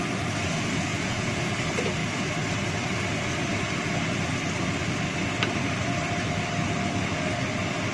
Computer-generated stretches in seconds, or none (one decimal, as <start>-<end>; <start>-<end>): 0.9-1.5